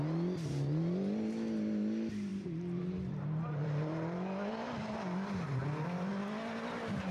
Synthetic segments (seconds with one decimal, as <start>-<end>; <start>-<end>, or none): 2.3-4.8